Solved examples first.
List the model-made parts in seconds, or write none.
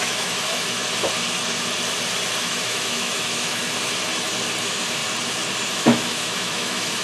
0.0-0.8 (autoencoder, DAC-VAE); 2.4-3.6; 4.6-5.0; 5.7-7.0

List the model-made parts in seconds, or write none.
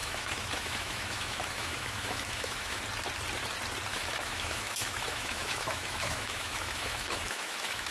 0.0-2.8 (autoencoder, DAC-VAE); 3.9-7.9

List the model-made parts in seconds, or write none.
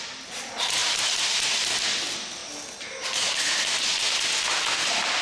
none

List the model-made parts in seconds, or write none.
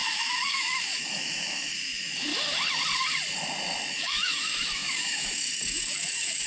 0.0-2.3 (autoencoder, DAC-VAE); 3.9-6.5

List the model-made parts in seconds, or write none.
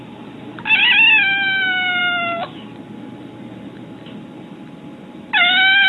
none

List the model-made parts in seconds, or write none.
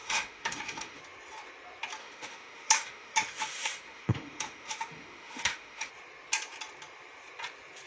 0.0-1.0 (autoencoder, DAC-VAE); 2.0-5.9